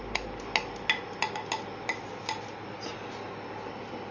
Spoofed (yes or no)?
no